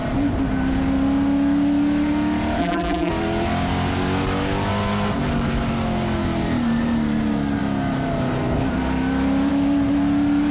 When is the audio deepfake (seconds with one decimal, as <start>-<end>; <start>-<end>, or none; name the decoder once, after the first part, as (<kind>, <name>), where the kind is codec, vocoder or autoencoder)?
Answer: 2.6-3.1 (vocoder, BigVGAN v2)